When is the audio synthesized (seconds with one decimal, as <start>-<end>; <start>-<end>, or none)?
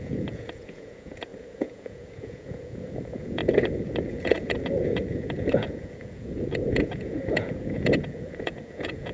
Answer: 0.0-9.1